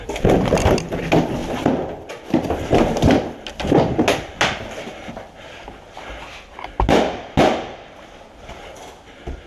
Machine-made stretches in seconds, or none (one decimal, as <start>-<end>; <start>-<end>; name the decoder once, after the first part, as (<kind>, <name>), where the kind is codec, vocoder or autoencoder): none